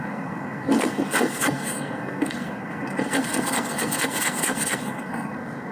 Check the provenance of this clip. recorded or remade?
remade